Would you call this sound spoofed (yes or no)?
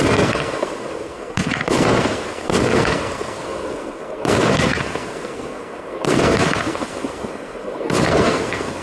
yes